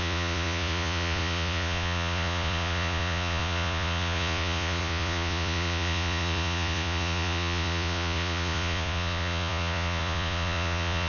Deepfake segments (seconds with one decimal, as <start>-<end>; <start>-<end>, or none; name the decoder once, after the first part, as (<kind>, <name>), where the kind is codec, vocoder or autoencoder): 0.0-11.1 (vocoder, Vocos)